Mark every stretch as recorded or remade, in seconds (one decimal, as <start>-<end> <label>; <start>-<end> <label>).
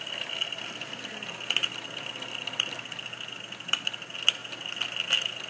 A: 0.0-5.5 recorded